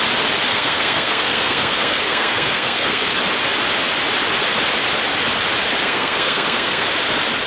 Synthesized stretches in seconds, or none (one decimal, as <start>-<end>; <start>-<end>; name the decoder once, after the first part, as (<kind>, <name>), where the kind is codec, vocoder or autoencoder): 0.5-3.2 (codec, SNAC); 5.8-6.9